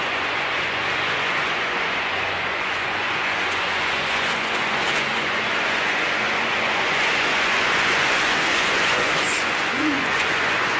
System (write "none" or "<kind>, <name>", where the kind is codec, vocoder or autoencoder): vocoder, Vocos